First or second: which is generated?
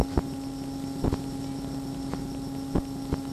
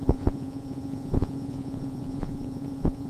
second